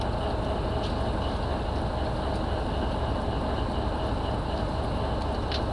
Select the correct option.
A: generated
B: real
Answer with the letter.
B